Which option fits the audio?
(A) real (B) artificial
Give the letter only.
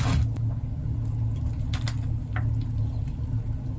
A